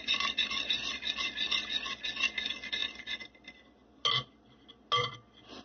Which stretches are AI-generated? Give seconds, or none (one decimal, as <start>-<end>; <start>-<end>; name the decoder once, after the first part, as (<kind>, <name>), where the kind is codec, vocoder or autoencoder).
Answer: none